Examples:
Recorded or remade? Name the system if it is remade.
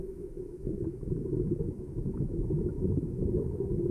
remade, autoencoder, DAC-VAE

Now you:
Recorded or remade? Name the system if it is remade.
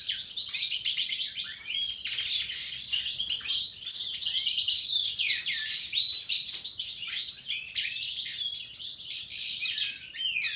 recorded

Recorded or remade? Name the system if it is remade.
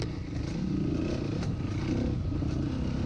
recorded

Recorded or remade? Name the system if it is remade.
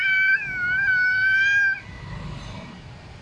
recorded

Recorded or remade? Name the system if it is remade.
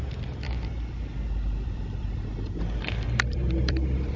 remade, vocoder, BigVGAN v2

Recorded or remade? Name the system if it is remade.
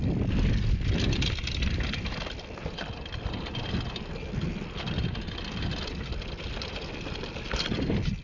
recorded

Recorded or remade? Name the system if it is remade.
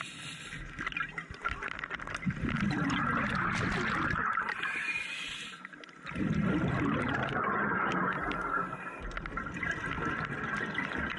recorded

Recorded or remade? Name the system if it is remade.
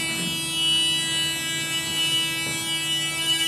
recorded